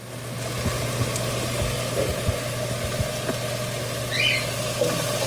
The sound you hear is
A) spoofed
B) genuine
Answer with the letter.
B